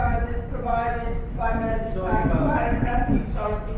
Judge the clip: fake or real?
fake